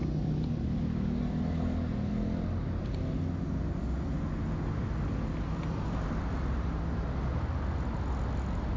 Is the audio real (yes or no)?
yes